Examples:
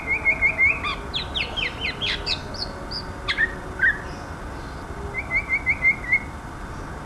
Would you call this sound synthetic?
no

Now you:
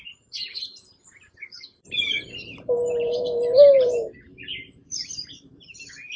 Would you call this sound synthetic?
yes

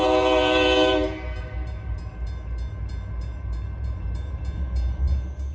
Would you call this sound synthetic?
yes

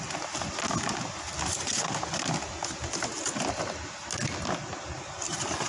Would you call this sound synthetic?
no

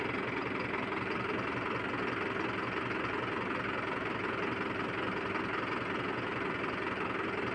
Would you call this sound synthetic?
no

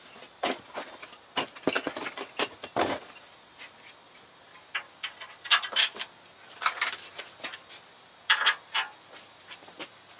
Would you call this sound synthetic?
yes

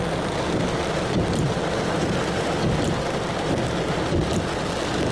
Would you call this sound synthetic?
no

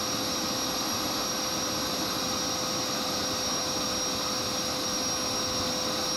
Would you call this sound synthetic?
no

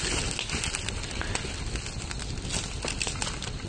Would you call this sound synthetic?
no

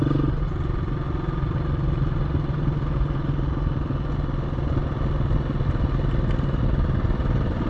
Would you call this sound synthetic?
no